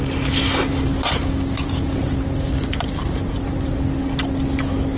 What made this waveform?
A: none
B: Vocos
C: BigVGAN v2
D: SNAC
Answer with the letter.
A